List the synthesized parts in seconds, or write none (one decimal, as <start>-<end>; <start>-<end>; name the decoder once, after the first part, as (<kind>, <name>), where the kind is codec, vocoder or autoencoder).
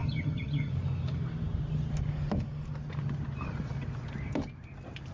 0.0-0.7 (vocoder, HiFi-GAN)